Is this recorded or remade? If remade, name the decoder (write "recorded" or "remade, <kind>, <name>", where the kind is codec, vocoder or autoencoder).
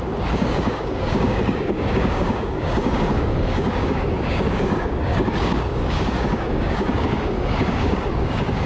remade, codec, DAC